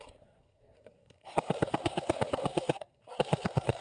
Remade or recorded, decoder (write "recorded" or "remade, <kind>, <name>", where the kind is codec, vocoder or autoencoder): remade, codec, SNAC